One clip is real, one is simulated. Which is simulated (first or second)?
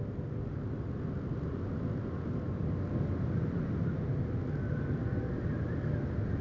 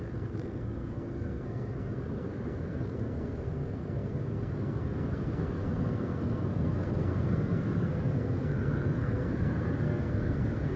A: second